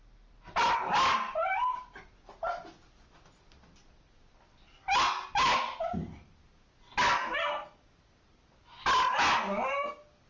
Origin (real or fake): real